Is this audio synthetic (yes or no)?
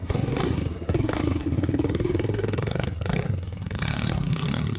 yes